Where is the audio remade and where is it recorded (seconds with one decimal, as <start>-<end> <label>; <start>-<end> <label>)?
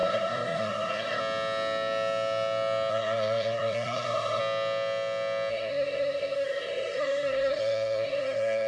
0.0-1.2 remade; 1.2-2.9 recorded; 2.9-4.4 remade; 4.4-5.5 recorded; 5.5-8.7 remade